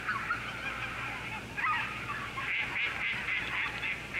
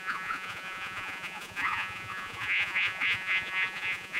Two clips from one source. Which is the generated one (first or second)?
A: second